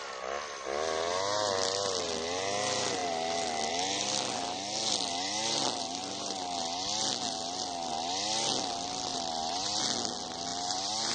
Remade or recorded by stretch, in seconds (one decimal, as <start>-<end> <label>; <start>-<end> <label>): 0.0-9.1 recorded; 9.1-9.8 remade; 9.8-10.5 recorded; 10.5-11.1 remade